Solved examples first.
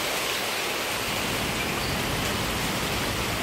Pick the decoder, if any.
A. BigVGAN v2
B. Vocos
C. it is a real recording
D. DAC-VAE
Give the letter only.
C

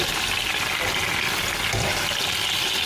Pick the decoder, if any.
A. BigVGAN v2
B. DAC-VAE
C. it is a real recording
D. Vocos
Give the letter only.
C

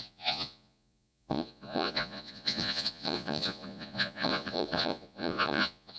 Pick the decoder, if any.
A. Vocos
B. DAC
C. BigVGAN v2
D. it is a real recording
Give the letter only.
A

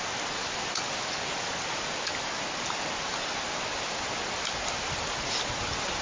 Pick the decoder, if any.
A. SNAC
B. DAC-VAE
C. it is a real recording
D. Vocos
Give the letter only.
C